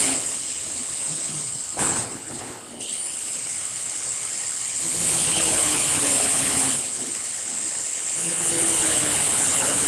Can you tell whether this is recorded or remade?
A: remade